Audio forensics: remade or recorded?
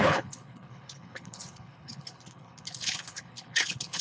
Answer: remade